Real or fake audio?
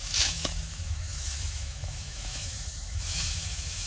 fake